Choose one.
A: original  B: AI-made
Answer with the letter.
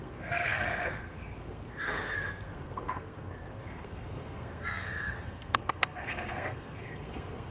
B